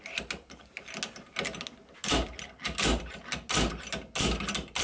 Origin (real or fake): real